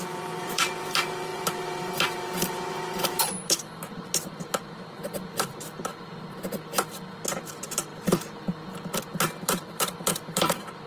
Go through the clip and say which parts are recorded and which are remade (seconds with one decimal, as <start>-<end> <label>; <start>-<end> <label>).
0.0-5.9 remade; 5.9-7.3 recorded; 7.3-7.9 remade; 7.9-9.0 recorded; 9.0-10.9 remade